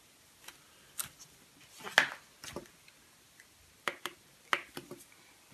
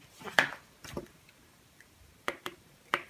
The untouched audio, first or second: first